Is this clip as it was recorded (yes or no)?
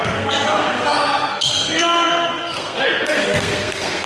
no